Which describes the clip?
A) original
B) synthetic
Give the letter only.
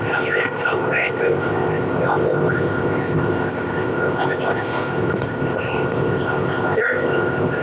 B